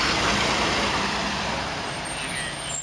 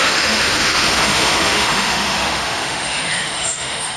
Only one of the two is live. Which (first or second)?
first